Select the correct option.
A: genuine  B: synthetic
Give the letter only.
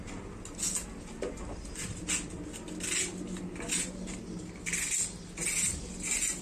A